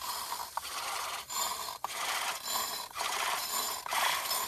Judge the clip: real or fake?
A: fake